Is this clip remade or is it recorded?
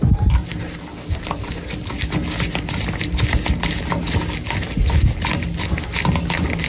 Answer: recorded